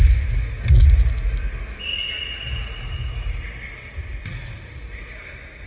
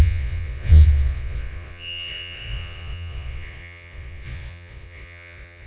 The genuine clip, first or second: first